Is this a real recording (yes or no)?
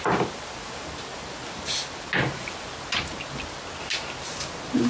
yes